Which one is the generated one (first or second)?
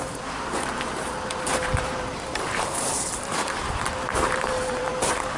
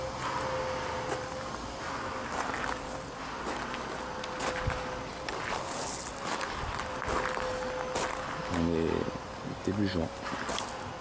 first